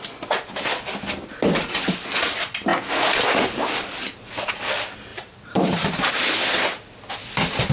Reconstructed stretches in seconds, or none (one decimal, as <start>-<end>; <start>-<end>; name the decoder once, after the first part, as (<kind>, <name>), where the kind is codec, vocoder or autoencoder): 5.1-6.1 (vocoder, BigVGAN v2)